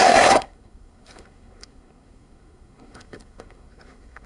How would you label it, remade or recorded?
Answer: remade